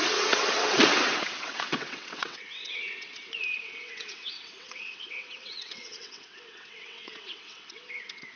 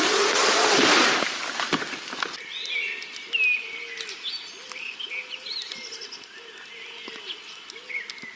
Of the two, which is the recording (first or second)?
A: second